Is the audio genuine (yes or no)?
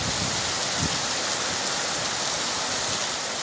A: yes